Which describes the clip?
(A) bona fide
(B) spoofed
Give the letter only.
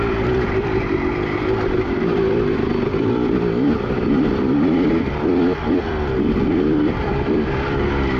B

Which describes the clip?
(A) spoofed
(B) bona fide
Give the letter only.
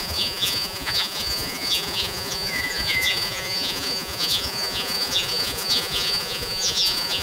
A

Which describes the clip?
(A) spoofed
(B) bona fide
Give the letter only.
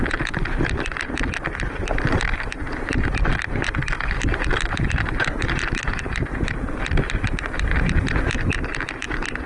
B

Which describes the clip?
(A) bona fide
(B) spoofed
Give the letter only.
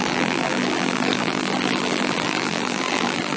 B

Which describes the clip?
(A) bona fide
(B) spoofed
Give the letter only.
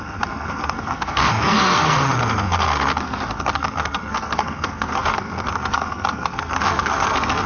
B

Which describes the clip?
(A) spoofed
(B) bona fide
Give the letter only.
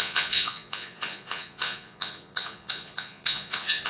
A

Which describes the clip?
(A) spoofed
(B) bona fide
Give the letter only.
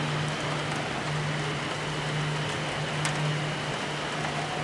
B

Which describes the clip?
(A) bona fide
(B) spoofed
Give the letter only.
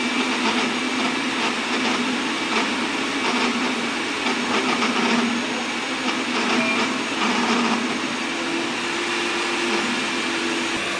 A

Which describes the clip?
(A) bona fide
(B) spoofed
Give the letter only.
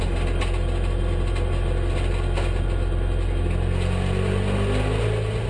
A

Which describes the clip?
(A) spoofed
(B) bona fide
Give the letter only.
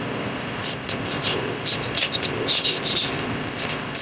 A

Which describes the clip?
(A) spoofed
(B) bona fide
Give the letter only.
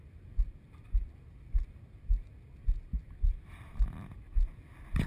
B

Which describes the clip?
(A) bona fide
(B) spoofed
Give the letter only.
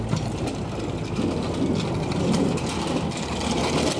A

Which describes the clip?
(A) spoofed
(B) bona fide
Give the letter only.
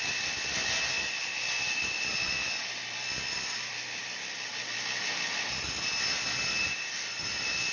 B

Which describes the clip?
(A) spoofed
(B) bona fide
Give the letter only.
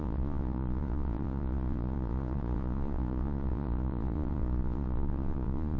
A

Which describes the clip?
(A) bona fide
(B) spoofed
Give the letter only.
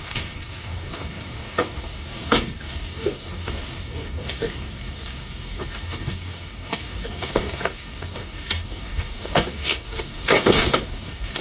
B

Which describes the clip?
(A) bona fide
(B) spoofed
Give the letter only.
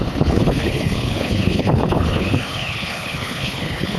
B